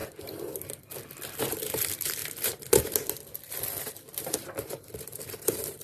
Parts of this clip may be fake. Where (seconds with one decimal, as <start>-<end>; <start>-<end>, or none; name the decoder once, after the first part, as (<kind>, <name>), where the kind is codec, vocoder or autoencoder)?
1.4-2.2 (vocoder, BigVGAN v2); 4.2-5.8